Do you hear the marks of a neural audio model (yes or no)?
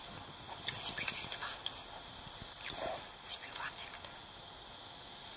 no